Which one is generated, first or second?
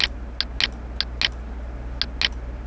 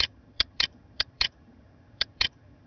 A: second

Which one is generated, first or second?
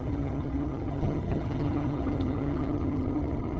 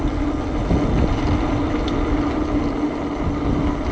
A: first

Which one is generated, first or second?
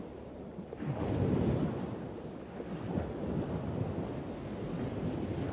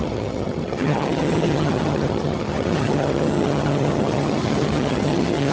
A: second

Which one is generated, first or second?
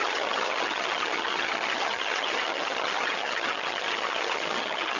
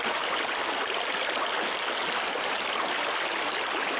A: first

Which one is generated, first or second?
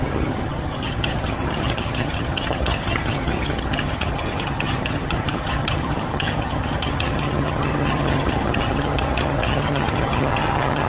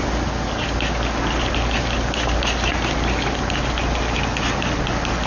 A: first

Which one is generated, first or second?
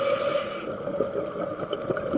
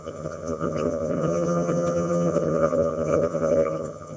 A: second